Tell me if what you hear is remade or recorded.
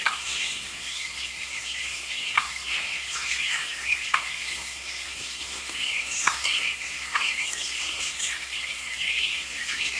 remade